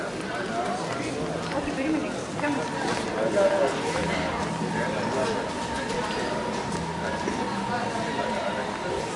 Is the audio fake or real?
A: real